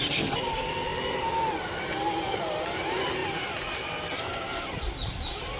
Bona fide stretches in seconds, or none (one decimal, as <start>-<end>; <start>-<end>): 0.0-5.6